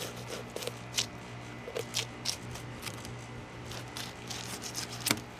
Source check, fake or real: real